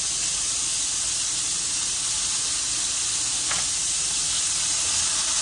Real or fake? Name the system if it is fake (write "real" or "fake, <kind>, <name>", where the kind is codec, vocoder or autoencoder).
real